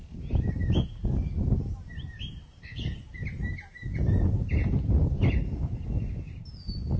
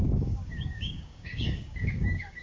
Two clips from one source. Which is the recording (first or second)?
first